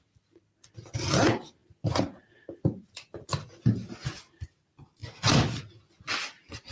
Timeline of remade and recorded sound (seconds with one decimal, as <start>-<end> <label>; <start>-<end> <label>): 0.0-6.7 recorded

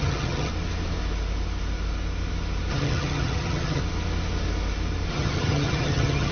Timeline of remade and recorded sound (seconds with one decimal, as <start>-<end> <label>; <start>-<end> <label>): 0.0-0.5 remade; 0.5-2.7 recorded; 2.7-3.8 remade; 3.8-5.1 recorded; 5.1-6.3 remade

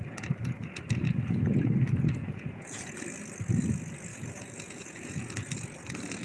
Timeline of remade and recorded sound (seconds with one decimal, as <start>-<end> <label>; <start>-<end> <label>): 0.0-2.2 recorded; 2.2-2.9 remade; 2.9-4.1 recorded; 4.1-5.3 remade; 5.3-6.2 recorded

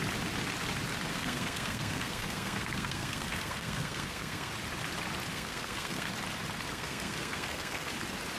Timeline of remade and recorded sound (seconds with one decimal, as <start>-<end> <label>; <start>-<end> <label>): 0.0-1.1 recorded; 1.1-4.5 remade; 4.5-5.3 recorded; 5.3-6.1 remade; 6.1-6.7 recorded; 6.7-7.9 remade; 7.9-8.4 recorded

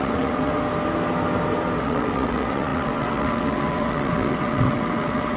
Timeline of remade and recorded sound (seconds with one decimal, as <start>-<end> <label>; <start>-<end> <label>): 0.0-0.5 remade; 0.5-1.8 recorded; 1.8-5.4 remade